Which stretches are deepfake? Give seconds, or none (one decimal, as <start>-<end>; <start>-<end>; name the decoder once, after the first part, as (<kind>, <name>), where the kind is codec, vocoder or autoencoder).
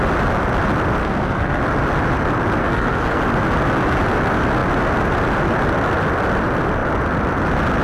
1.0-1.6 (codec, SNAC); 2.6-3.2